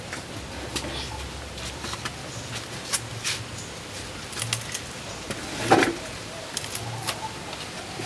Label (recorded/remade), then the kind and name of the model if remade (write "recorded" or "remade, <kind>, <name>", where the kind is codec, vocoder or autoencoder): recorded